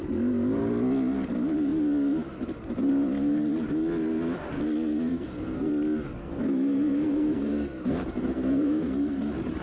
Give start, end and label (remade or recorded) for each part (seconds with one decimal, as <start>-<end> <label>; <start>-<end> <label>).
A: 0.0-5.1 recorded; 5.1-5.7 remade; 5.7-6.2 recorded; 6.2-9.2 remade; 9.2-9.6 recorded